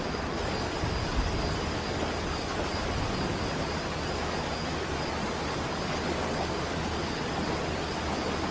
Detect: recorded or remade recorded